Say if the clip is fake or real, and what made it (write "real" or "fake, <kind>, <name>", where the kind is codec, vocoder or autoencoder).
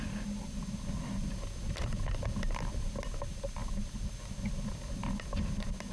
real